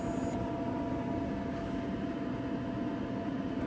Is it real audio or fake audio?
real